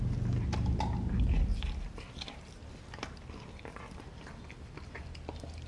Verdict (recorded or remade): recorded